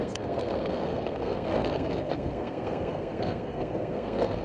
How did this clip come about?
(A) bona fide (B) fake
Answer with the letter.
B